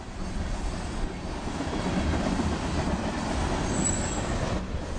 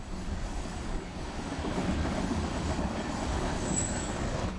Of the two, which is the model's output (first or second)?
second